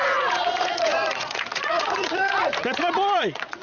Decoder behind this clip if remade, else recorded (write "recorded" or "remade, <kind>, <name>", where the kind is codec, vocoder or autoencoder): remade, vocoder, Vocos